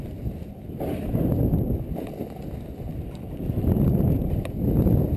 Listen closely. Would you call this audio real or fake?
real